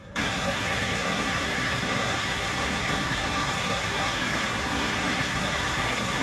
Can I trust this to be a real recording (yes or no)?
no